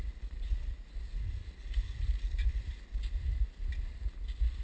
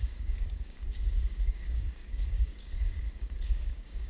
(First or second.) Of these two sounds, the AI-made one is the second